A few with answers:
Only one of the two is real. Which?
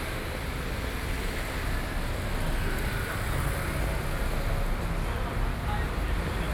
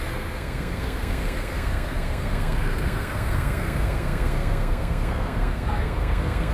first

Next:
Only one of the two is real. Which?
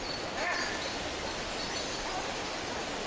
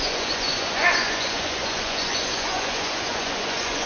first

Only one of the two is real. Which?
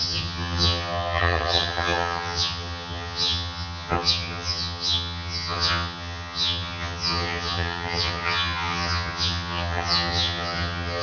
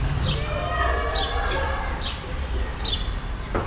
second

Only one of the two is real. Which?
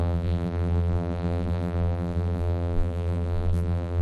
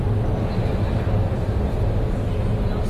second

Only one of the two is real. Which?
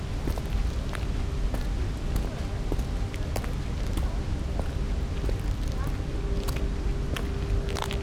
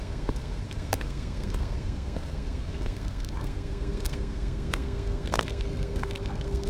first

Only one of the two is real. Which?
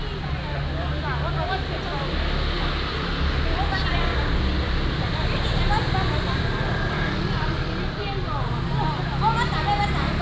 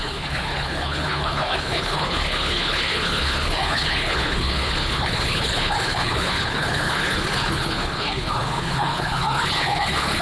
first